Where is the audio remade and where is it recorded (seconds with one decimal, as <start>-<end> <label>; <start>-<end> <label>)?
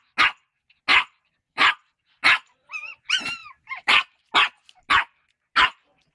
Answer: 0.0-0.9 recorded; 0.9-1.7 remade; 1.7-3.4 recorded; 3.4-4.2 remade; 4.2-6.1 recorded